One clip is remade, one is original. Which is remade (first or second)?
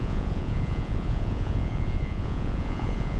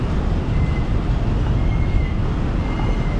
first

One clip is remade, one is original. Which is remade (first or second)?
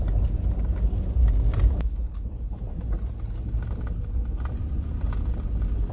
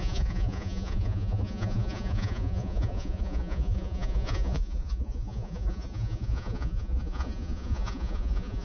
second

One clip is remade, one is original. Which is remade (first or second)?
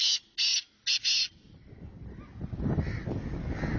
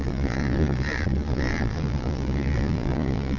second